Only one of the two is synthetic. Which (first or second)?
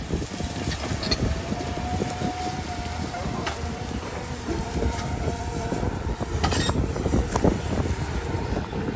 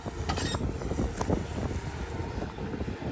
first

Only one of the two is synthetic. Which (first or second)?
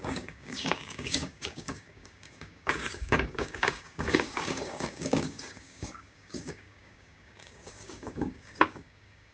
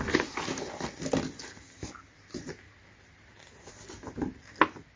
first